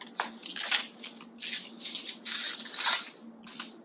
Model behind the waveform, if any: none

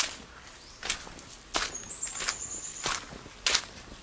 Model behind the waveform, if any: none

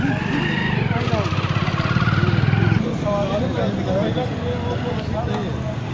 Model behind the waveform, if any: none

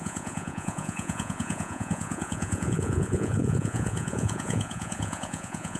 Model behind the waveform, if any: vocoder, Vocos